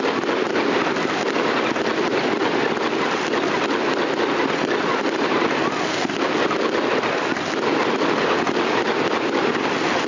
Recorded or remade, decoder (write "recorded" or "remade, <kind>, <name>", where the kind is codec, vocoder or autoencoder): recorded